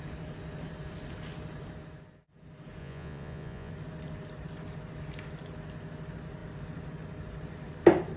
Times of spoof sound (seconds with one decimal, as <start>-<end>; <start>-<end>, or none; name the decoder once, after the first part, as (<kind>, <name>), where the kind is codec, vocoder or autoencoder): 2.8-3.7 (vocoder, Vocos)

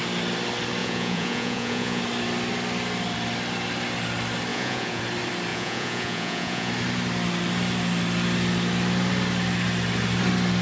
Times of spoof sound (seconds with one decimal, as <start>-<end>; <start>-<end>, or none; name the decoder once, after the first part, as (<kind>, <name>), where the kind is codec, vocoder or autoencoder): 0.8-2.0 (vocoder, Vocos); 4.5-5.0; 5.5-6.7